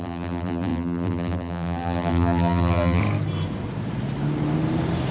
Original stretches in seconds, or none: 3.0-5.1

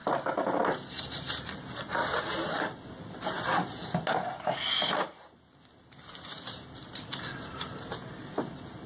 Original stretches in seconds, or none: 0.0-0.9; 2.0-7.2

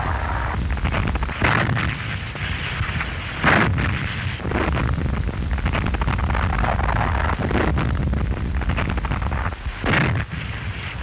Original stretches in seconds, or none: 0.0-1.0; 5.1-11.0